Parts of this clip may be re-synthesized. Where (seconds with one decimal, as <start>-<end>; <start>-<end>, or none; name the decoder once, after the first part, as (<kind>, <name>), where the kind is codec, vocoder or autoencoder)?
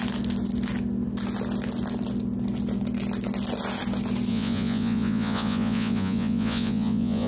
4.3-7.3 (vocoder, Vocos)